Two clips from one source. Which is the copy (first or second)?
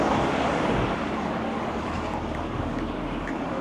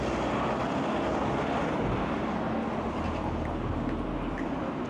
first